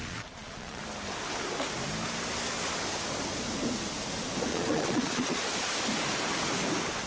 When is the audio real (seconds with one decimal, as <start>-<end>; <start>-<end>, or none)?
0.8-4.5; 5.4-7.1